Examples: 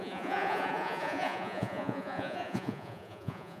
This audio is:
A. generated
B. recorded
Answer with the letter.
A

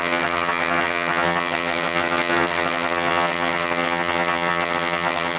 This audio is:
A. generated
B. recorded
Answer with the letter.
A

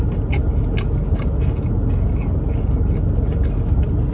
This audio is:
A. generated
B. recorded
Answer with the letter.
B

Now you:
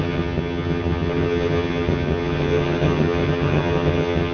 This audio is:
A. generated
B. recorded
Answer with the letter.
A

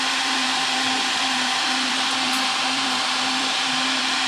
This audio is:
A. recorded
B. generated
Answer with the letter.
B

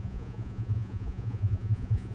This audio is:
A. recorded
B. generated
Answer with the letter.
B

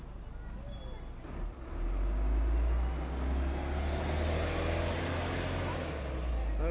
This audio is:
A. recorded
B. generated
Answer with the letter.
A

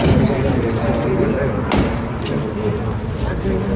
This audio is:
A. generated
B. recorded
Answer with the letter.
B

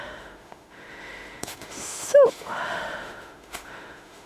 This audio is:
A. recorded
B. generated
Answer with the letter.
B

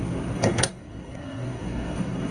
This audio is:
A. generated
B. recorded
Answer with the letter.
A